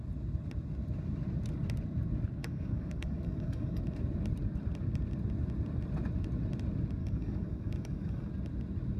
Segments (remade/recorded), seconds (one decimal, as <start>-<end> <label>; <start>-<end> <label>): 0.0-2.4 recorded; 2.4-3.8 remade; 3.8-7.0 recorded; 7.0-8.3 remade; 8.3-9.0 recorded